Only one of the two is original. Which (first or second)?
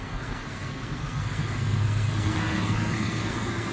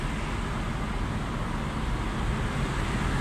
second